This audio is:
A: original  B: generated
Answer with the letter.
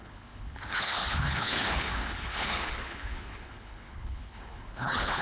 B